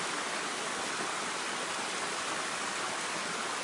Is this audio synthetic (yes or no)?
no